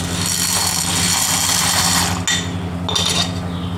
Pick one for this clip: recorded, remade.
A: recorded